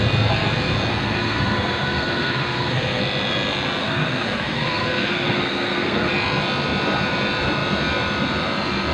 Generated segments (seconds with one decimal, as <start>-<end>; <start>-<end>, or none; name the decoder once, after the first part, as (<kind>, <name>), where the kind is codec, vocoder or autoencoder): 0.9-3.0 (codec, SNAC); 3.8-6.1